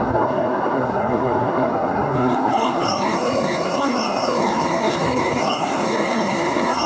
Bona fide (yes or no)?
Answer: no